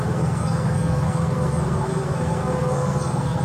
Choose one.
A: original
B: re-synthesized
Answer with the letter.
B